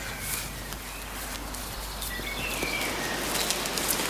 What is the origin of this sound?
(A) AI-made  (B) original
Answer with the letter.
B